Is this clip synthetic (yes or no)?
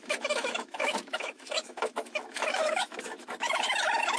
yes